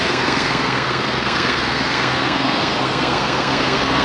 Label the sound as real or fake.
fake